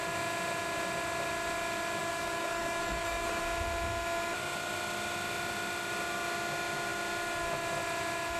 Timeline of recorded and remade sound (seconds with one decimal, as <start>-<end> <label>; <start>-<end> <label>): 0.0-2.0 recorded; 2.0-3.4 remade; 3.4-8.4 recorded